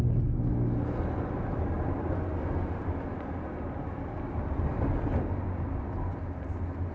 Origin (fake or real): real